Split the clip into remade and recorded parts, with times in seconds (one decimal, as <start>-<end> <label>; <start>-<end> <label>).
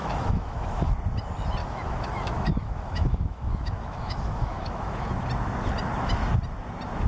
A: 0.0-0.9 remade; 0.9-1.6 recorded; 1.6-5.1 remade; 5.1-7.1 recorded